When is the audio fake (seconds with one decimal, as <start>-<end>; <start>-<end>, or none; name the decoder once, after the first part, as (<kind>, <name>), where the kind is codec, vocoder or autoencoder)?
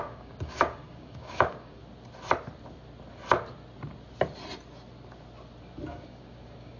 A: 0.0-1.8 (codec, DAC); 5.9-6.8